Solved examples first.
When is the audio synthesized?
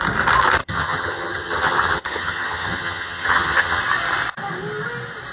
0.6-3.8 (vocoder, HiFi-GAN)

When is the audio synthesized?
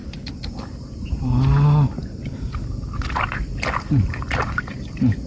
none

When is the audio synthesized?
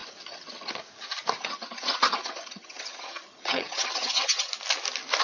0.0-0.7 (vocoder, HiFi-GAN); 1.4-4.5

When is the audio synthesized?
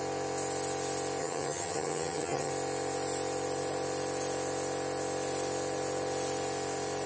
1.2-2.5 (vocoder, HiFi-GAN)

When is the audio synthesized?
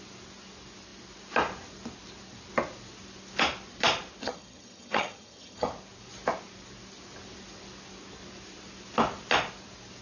4.2-5.7 (vocoder, HiFi-GAN)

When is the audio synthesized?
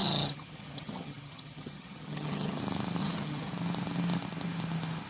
0.0-2.6 (vocoder, HiFi-GAN); 3.0-3.5